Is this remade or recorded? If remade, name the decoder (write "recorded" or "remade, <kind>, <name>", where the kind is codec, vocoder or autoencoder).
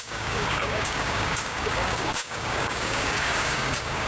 remade, codec, DAC